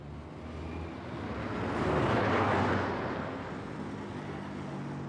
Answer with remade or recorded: recorded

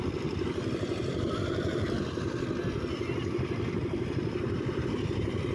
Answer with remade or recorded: recorded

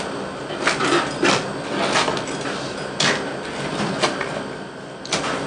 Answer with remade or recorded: recorded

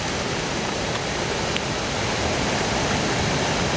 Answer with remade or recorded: recorded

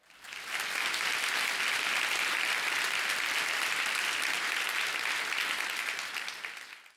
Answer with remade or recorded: recorded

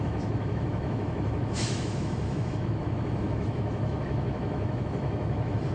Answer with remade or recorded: remade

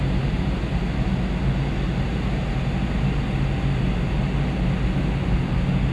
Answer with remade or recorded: recorded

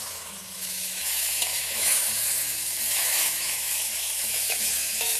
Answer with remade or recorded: remade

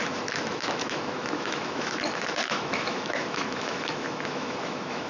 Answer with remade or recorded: remade